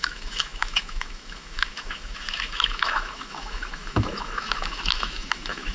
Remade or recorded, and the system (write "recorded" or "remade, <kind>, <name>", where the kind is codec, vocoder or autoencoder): remade, autoencoder, DAC-VAE